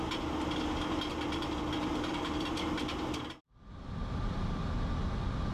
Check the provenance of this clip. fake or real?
real